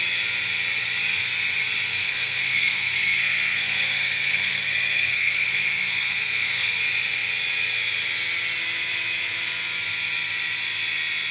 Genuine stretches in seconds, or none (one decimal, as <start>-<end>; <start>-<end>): 0.0-1.9; 6.8-11.3